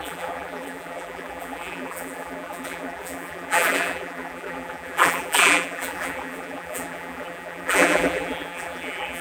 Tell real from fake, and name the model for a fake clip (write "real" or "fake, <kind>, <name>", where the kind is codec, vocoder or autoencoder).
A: fake, vocoder, BigVGAN v2